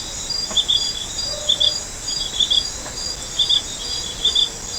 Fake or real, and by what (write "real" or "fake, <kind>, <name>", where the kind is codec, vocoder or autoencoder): real